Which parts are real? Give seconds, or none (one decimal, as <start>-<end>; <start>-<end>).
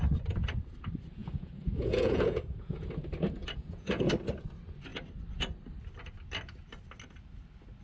0.0-1.2; 2.9-3.4; 4.1-7.8